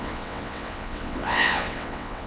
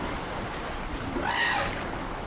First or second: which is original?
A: second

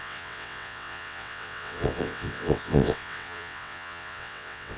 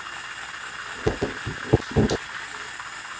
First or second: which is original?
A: second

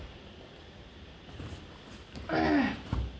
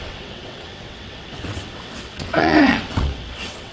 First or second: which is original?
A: first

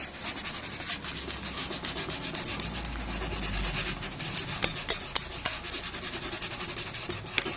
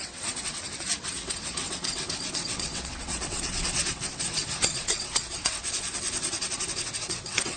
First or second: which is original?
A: first